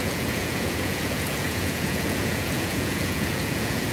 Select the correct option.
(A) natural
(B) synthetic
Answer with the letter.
B